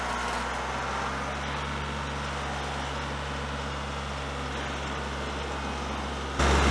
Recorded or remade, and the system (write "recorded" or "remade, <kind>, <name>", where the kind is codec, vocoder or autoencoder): recorded